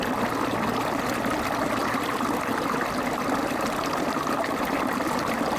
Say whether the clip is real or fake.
real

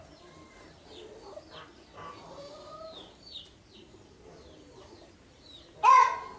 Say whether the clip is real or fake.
real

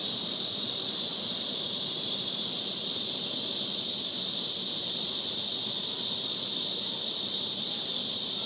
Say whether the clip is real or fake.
fake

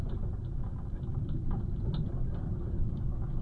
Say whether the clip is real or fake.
real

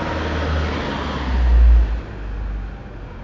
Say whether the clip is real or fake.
real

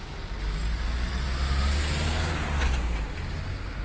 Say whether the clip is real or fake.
real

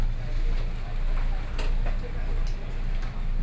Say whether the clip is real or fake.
real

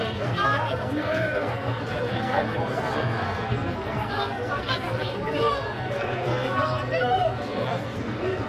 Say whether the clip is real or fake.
fake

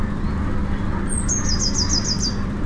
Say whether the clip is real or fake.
real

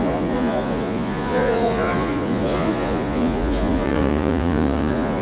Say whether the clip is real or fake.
fake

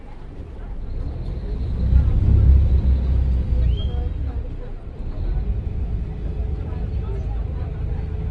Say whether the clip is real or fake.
real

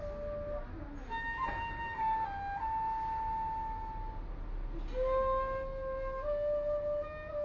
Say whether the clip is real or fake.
real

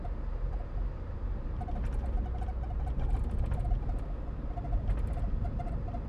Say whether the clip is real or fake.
real